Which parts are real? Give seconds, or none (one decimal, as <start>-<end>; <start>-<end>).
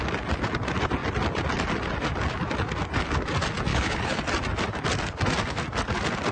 0.0-3.7; 4.2-6.3